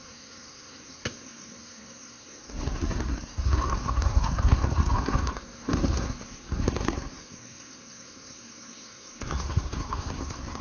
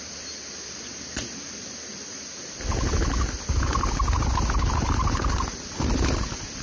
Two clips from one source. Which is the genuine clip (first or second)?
second